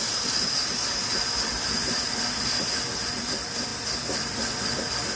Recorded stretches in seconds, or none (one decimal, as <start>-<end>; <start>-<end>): 0.0-5.2